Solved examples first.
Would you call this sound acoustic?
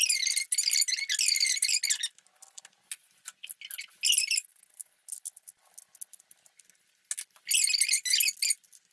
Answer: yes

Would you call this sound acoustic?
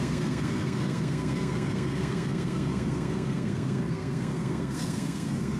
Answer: no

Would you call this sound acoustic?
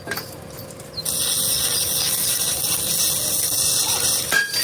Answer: yes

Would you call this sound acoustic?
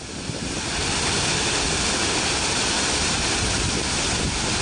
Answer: yes